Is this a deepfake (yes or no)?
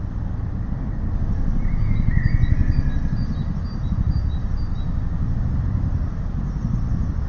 no